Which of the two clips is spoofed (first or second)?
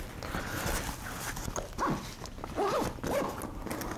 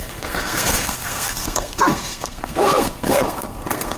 second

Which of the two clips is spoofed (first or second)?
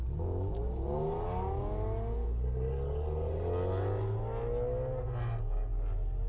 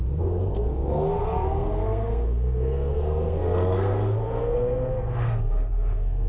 second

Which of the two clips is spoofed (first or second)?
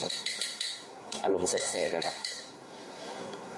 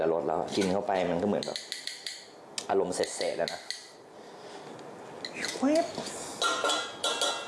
first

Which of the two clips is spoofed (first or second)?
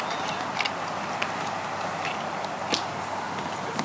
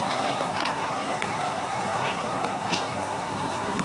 second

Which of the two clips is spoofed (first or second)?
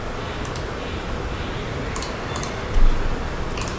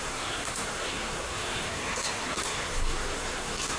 second